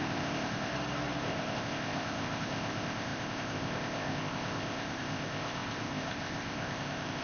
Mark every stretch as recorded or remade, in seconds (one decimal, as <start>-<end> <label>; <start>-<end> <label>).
0.0-0.7 remade; 0.7-1.2 recorded; 1.2-7.2 remade